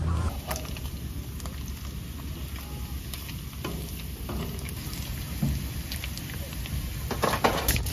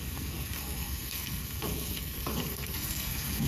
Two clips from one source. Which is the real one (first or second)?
first